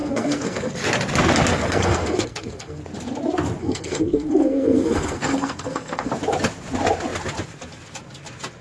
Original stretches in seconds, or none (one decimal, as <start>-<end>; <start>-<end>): 0.8-1.5; 2.8-3.6; 6.1-8.6